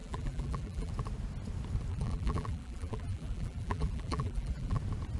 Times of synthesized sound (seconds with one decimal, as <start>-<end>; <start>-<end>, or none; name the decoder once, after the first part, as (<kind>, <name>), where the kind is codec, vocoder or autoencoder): 0.0-0.9 (vocoder, BigVGAN v2); 1.9-4.8